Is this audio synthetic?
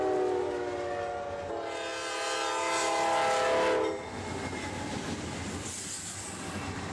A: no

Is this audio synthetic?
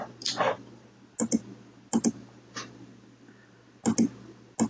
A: no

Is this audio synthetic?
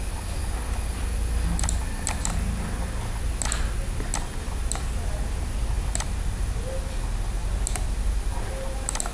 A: no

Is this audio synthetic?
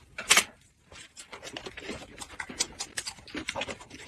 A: yes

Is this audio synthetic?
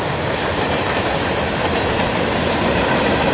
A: yes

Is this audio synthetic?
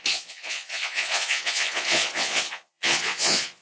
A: yes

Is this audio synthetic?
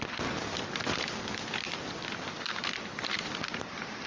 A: no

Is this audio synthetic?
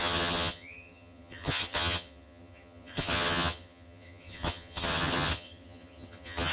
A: yes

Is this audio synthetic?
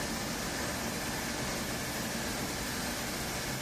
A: no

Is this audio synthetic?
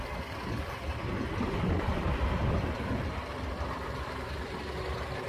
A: no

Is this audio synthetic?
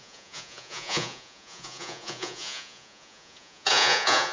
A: yes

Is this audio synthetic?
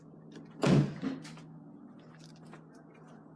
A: no